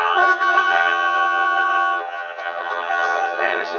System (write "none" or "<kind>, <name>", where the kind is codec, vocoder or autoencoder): vocoder, HiFi-GAN